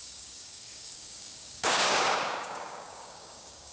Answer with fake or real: fake